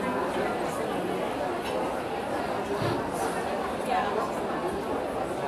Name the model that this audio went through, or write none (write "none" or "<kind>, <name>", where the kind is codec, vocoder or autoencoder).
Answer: none